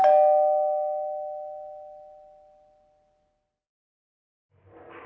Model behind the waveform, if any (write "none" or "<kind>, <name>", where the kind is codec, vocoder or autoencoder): none